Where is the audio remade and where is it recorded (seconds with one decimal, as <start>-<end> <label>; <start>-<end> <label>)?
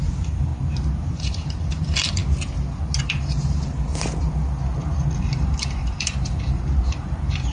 0.0-0.5 remade; 0.5-1.1 recorded; 1.1-2.2 remade; 2.2-3.0 recorded; 3.0-3.9 remade; 3.9-5.2 recorded; 5.2-7.5 remade